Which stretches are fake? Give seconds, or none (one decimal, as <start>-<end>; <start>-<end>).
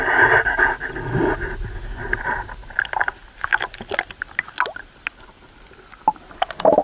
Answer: none